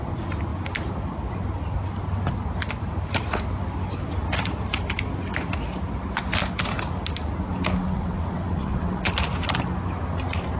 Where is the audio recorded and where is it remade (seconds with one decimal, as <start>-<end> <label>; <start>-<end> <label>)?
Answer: 0.0-7.8 recorded; 7.8-9.1 remade; 9.1-10.6 recorded